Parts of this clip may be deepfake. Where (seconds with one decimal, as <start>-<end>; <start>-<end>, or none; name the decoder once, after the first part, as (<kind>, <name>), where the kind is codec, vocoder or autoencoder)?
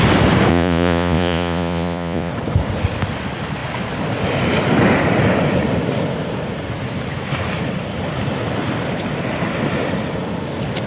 0.5-2.3 (vocoder, Vocos)